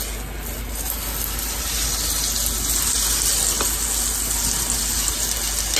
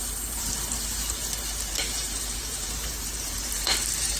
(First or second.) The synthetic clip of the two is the second